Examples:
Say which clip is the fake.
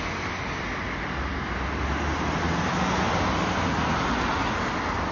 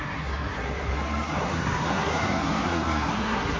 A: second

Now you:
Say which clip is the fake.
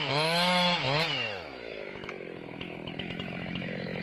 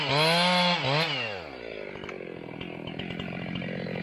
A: first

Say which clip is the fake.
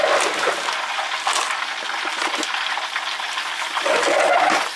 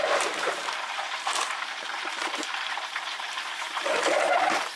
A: second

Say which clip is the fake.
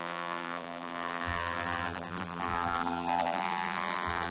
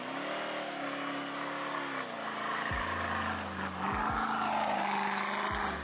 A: first